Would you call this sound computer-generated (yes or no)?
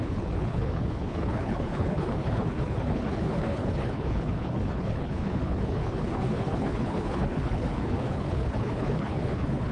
yes